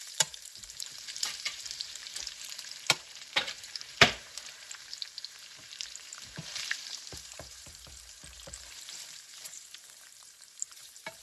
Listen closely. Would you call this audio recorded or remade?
remade